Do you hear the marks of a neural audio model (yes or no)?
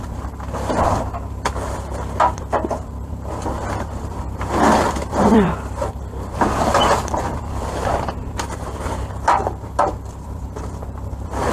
yes